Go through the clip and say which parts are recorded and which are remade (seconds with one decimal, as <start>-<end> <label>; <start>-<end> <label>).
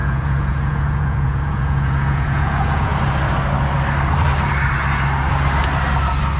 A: 0.0-2.9 remade; 2.9-6.4 recorded